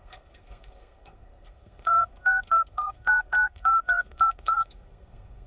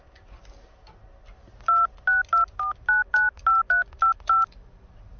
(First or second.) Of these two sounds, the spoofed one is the first